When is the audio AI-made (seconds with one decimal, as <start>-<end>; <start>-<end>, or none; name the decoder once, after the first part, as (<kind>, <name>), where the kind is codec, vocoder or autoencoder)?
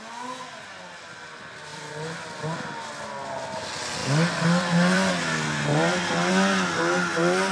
1.7-2.9 (vocoder, BigVGAN v2); 4.0-5.1; 5.7-6.3